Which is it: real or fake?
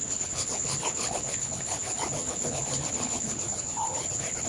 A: fake